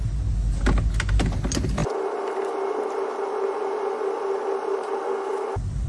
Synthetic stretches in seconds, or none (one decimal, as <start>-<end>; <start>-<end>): none